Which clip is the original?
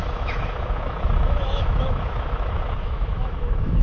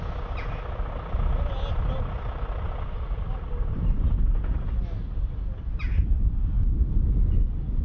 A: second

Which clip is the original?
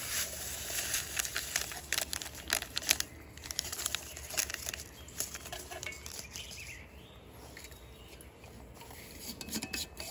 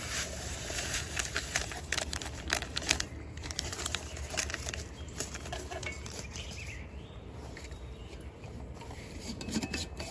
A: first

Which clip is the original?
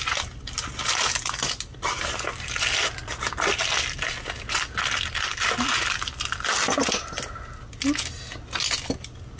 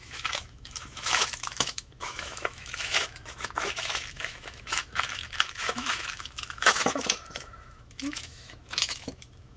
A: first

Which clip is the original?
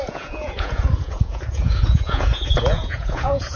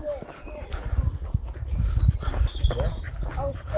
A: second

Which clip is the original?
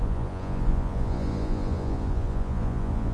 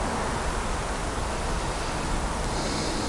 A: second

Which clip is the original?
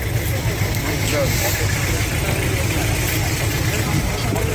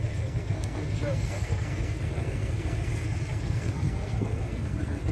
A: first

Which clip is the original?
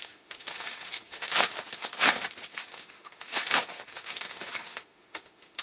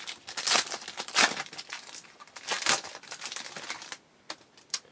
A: second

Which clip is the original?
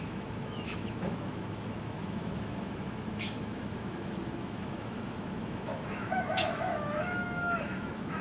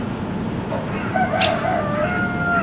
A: second